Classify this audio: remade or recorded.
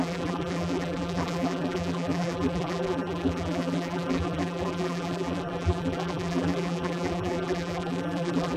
remade